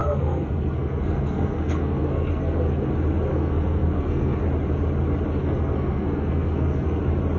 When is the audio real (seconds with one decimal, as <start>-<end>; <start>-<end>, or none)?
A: 2.9-3.3; 4.4-5.4; 7.0-7.4